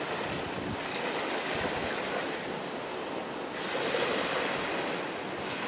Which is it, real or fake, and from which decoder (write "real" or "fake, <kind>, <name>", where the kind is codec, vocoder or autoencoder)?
real